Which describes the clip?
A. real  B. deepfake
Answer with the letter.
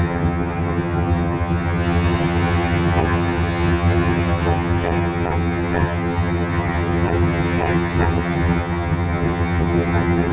B